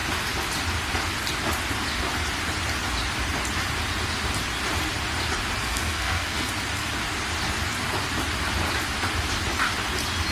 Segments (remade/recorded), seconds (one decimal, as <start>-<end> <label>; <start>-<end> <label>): 0.0-5.6 recorded; 5.6-6.5 remade; 6.5-10.3 recorded